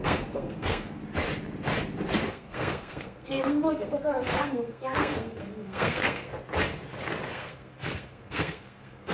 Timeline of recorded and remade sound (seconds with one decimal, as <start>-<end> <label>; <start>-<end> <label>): 0.0-1.0 remade; 1.0-2.3 recorded; 2.3-6.3 remade; 6.3-7.3 recorded; 7.3-9.1 remade